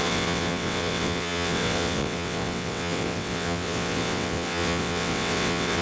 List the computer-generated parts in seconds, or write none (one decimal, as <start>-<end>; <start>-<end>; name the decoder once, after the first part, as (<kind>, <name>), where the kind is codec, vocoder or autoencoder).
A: 0.0-5.8 (vocoder, WaveNeXt)